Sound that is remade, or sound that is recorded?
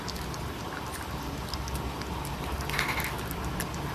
recorded